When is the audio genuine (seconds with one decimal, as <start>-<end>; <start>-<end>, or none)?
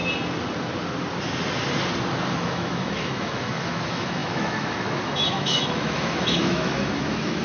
0.0-2.3